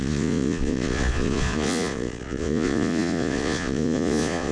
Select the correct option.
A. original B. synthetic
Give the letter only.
B